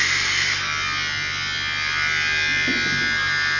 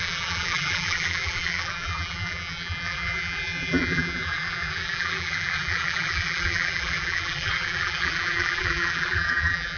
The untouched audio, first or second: first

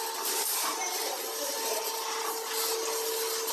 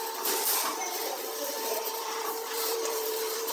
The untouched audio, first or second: first